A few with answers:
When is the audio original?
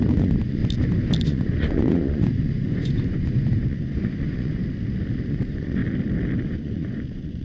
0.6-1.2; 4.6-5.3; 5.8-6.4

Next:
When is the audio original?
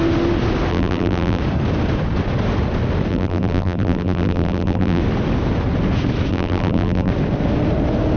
0.0-0.7; 1.4-3.1; 5.0-6.3; 7.1-8.2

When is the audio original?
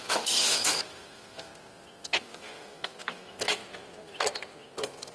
1.5-2.2; 3.6-5.1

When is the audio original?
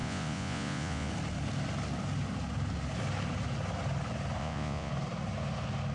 1.1-4.4; 4.9-5.9